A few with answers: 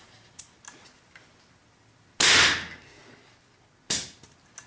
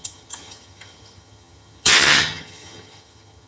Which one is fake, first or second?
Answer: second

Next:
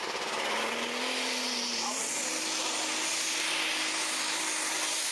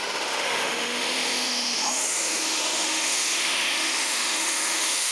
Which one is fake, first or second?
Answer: second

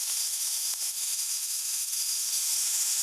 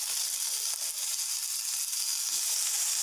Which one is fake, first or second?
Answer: first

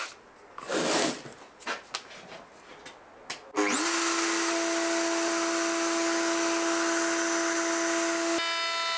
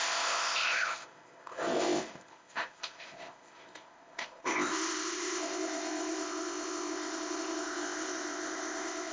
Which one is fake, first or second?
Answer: second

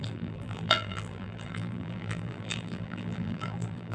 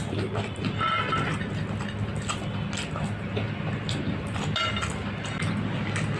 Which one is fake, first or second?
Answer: first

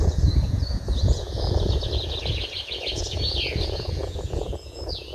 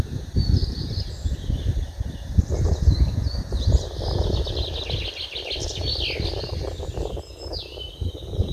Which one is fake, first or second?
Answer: first